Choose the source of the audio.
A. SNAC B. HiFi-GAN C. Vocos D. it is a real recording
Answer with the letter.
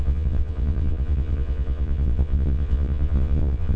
C